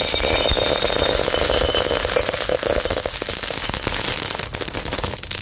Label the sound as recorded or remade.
recorded